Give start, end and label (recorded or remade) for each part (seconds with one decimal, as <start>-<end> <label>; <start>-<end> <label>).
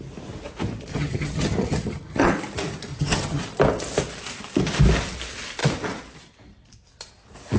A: 0.0-0.9 recorded; 0.9-2.3 remade; 2.3-2.9 recorded; 2.9-3.4 remade; 3.4-7.6 recorded